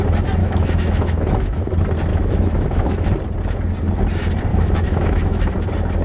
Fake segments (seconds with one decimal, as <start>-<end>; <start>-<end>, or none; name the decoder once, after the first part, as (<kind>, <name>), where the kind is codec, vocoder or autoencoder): 0.4-1.6 (autoencoder, DAC-VAE); 2.1-3.1; 4.5-5.5